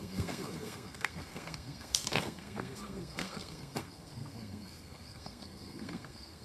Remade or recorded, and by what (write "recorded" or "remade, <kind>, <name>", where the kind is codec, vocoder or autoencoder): remade, codec, SNAC